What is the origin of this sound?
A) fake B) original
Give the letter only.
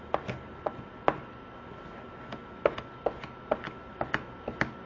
B